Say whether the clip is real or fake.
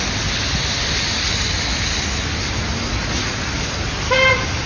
real